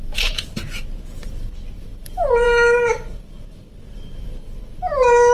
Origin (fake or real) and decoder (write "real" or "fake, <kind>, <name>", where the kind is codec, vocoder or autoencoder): fake, vocoder, BigVGAN v2